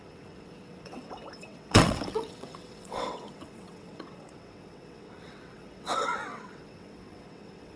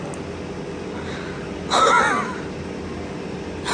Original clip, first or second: second